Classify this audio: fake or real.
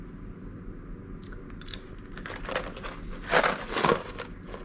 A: real